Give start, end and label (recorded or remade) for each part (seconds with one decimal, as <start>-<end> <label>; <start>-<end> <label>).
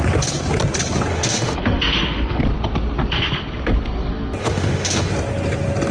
0.0-1.1 recorded; 1.1-2.4 remade; 2.4-4.4 recorded; 4.4-5.1 remade; 5.1-5.9 recorded